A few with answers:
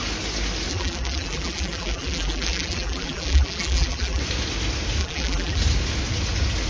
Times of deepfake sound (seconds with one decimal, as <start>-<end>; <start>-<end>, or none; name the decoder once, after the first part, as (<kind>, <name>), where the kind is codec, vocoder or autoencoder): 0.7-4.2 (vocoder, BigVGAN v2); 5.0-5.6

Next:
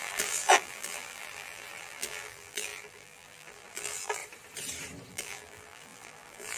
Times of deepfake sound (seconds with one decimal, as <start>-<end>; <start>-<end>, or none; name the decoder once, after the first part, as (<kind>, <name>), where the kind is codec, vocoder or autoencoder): 0.0-4.2 (vocoder, BigVGAN v2); 5.1-6.6

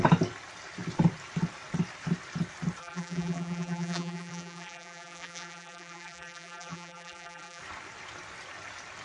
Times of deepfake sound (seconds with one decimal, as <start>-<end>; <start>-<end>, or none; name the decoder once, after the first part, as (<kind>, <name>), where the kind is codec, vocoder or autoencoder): 2.8-7.6 (vocoder, BigVGAN v2)

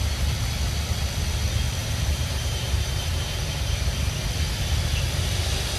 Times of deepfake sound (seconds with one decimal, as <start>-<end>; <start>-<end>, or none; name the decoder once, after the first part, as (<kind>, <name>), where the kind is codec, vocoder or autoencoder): 1.8-4.2 (vocoder, BigVGAN v2)